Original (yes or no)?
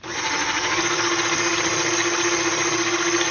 yes